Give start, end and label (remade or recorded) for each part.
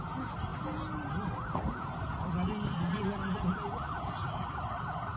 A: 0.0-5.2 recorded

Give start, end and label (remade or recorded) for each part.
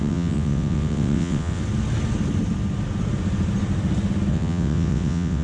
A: 0.0-1.6 remade; 1.6-4.3 recorded; 4.3-5.4 remade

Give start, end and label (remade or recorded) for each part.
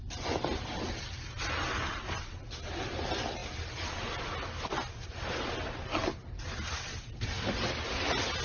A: 0.0-8.4 recorded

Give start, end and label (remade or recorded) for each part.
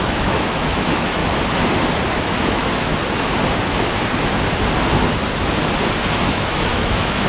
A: 0.0-1.2 remade; 1.2-2.1 recorded; 2.1-2.9 remade; 2.9-6.2 recorded; 6.2-7.3 remade